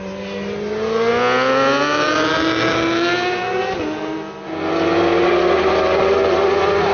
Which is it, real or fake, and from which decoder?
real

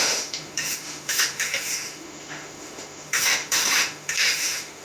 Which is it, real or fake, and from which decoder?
fake, autoencoder, DAC-VAE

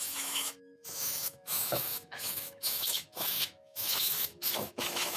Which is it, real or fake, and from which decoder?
fake, autoencoder, DAC-VAE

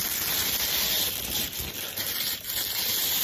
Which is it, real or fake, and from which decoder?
real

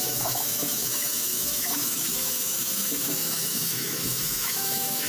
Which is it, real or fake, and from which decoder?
fake, autoencoder, DAC-VAE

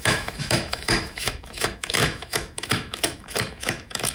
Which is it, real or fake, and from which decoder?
fake, autoencoder, DAC-VAE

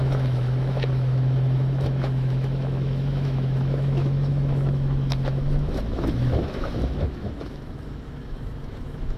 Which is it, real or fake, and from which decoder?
fake, autoencoder, DAC-VAE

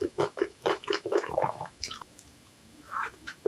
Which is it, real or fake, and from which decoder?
fake, autoencoder, DAC-VAE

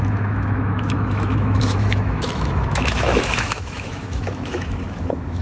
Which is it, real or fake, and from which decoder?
fake, autoencoder, DAC-VAE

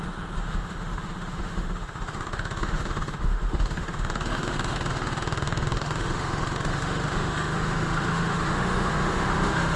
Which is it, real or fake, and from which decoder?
fake, autoencoder, DAC-VAE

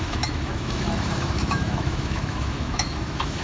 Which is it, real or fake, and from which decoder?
fake, autoencoder, DAC-VAE